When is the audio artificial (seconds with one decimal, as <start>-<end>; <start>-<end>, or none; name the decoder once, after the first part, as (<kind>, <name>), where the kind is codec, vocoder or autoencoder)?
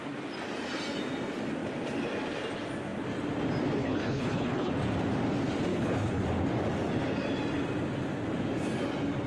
3.8-4.7 (codec, HILCodec); 5.7-6.2